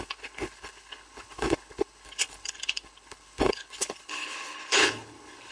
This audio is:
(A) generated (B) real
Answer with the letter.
A